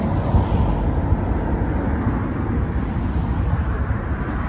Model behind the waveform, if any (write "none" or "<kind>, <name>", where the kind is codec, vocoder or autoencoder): none